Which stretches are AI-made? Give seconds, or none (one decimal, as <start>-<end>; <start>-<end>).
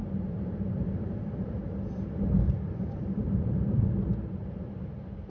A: 0.0-5.3